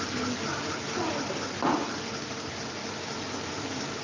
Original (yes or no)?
yes